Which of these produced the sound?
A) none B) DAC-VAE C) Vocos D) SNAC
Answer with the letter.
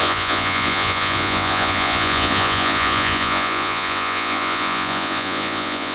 C